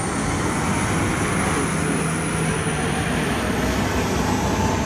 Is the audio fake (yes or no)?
no